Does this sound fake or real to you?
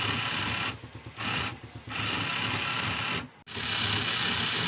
real